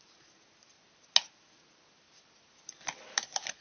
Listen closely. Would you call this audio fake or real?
real